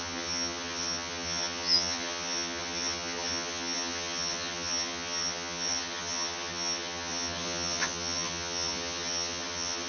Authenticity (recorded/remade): remade